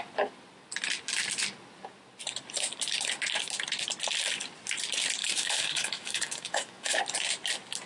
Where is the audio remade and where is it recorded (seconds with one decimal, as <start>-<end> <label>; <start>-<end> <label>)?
0.0-5.2 recorded; 5.2-7.0 remade; 7.0-7.9 recorded